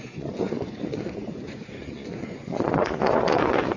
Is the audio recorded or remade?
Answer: remade